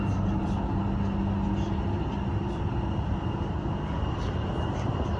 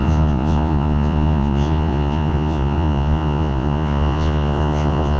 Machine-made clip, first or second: second